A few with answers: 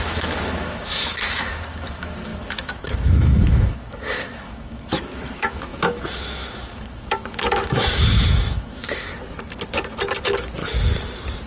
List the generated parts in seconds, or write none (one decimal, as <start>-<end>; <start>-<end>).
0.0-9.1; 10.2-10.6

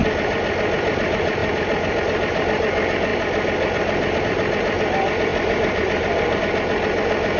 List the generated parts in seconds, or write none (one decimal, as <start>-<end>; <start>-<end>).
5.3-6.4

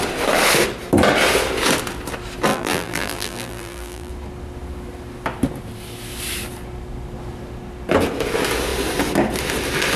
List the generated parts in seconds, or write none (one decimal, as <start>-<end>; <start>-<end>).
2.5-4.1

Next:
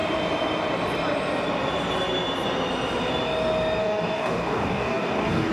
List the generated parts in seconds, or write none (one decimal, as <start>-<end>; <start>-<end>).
3.8-5.5

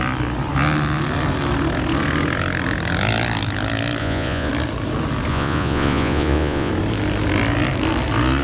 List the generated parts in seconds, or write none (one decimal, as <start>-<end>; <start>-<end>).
4.0-4.5; 5.3-6.7

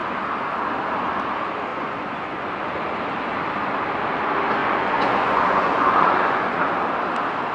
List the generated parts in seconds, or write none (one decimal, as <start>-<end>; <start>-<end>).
1.7-2.7; 4.6-6.7

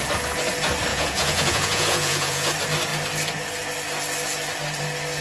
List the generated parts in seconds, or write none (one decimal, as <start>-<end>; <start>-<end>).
0.9-2.5

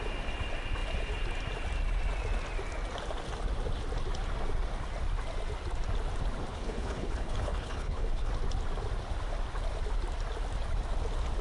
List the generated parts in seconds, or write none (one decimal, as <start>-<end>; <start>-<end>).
6.5-8.3